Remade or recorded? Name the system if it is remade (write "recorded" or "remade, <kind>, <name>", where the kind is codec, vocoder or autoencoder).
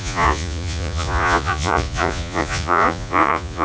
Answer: remade, vocoder, Vocos